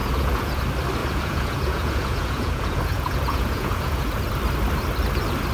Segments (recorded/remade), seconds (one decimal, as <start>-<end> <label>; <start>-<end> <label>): 0.0-0.6 remade; 0.6-1.0 recorded; 1.0-4.3 remade; 4.3-5.5 recorded

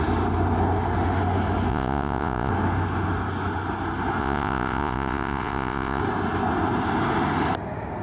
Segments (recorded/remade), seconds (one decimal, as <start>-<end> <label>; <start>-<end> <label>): 0.0-1.7 recorded; 1.7-2.5 remade; 2.5-4.2 recorded; 4.2-6.0 remade; 6.0-8.0 recorded